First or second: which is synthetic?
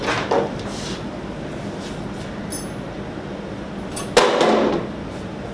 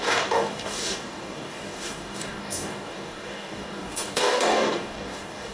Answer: second